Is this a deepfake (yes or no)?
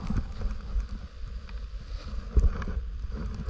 no